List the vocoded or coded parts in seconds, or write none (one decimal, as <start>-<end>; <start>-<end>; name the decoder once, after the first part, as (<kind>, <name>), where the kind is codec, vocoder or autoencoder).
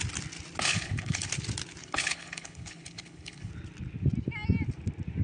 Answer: 0.7-1.3 (codec, HILCodec); 1.8-3.5